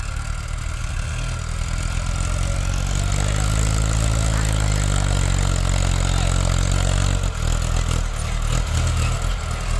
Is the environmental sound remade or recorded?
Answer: recorded